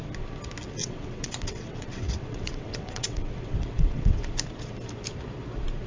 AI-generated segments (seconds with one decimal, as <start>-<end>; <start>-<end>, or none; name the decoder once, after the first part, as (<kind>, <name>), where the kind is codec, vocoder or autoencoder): 0.8-4.3 (vocoder, WaveNeXt)